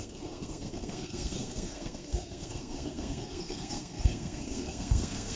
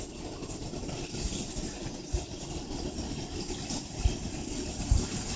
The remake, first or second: first